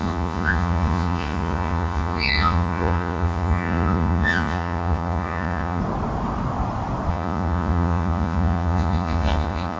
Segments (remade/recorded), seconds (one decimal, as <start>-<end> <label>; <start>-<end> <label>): 0.0-5.8 remade; 5.8-7.1 recorded; 7.1-9.8 remade